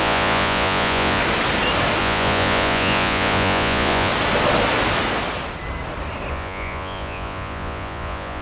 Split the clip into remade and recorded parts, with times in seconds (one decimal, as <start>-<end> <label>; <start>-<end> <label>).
0.0-1.2 remade; 1.2-2.0 recorded; 2.0-4.1 remade; 4.1-6.3 recorded; 6.3-8.4 remade